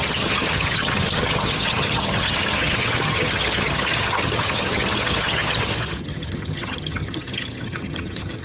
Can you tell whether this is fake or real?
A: fake